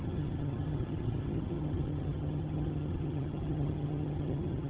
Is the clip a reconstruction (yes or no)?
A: yes